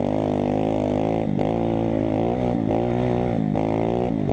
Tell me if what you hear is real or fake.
real